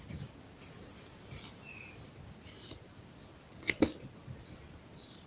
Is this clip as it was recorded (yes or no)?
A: yes